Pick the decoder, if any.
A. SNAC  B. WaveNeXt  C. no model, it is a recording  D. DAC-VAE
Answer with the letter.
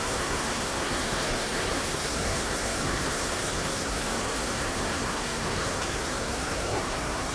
A